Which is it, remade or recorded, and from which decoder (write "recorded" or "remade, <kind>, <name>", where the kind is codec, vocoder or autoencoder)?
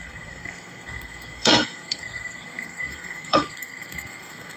remade, codec, SNAC